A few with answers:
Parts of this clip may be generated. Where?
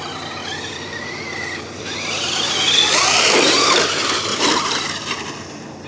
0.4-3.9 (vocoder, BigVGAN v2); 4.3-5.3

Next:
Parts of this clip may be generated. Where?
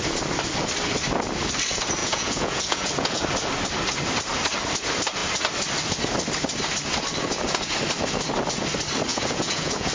2.0-3.2 (vocoder, Vocos); 9.1-9.9